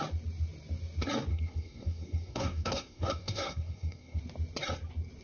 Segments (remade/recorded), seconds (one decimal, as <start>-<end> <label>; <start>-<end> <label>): 0.0-1.3 recorded; 1.3-4.2 remade; 4.2-5.2 recorded